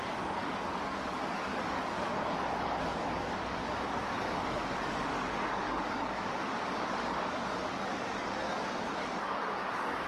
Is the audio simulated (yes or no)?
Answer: yes